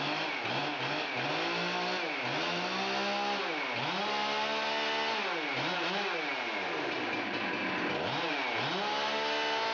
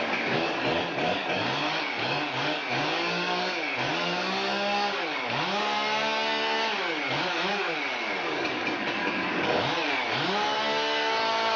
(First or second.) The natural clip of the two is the first